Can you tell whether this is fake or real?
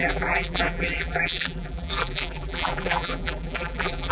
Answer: fake